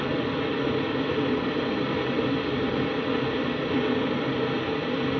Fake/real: real